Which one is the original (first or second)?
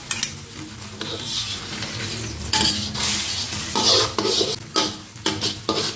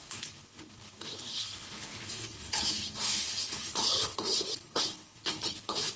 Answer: first